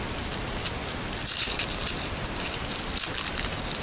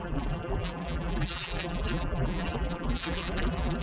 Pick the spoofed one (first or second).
second